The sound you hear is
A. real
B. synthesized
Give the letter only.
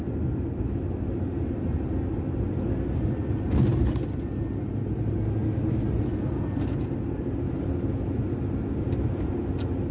A